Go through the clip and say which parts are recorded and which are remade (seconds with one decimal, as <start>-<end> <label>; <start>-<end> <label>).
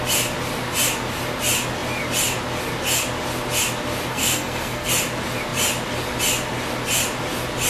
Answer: 0.0-4.1 recorded; 4.1-4.9 remade; 4.9-7.7 recorded